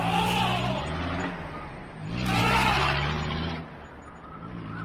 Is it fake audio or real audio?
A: real